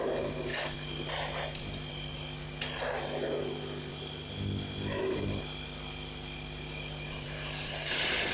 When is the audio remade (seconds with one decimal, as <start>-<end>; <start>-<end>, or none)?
0.5-1.9; 3.9-7.9